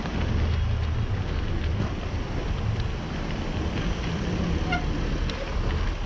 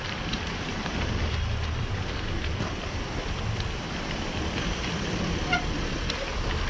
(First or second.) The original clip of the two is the first